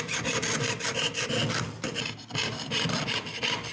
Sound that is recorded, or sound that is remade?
recorded